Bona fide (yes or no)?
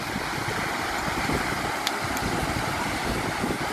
yes